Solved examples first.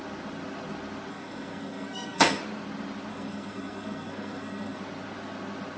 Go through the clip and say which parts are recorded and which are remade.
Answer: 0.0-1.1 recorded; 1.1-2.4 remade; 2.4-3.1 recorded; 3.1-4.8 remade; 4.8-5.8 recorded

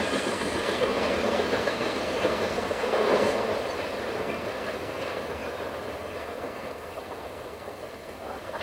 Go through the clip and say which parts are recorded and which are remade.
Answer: 0.0-3.5 remade; 3.5-4.2 recorded; 4.2-5.4 remade; 5.4-6.0 recorded; 6.0-8.6 remade

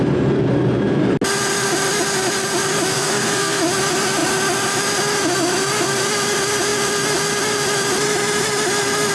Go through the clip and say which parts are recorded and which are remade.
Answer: 0.0-2.9 recorded; 2.9-3.6 remade; 3.6-9.1 recorded

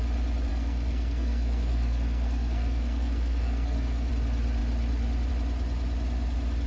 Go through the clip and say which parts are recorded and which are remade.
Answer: 0.0-0.5 recorded; 0.5-4.1 remade; 4.1-6.7 recorded

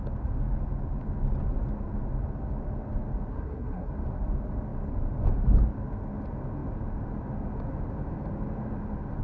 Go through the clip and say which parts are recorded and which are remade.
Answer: 0.0-3.3 recorded; 3.3-3.9 remade; 3.9-9.2 recorded

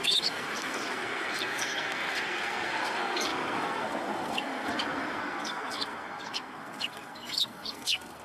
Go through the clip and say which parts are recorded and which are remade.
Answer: 0.0-8.2 remade

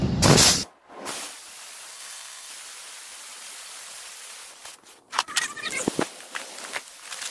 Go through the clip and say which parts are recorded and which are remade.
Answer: 0.0-1.9 recorded; 1.9-2.5 remade; 2.5-7.3 recorded

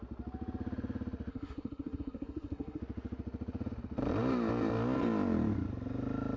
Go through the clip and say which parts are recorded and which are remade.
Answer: 0.0-1.3 recorded; 1.3-2.8 remade; 2.8-6.4 recorded